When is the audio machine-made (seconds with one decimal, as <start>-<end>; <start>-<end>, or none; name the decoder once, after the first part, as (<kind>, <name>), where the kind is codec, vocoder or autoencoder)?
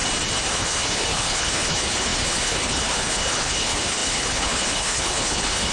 0.5-5.7 (codec, HILCodec)